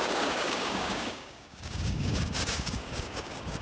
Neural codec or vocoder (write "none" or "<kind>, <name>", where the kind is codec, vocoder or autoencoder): codec, DAC